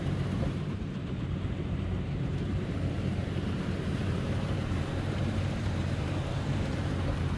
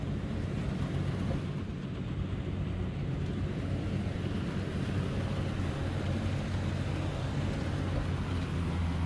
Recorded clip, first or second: second